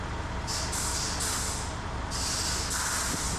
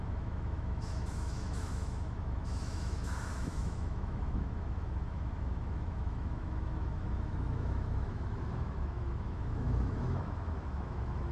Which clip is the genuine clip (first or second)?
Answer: first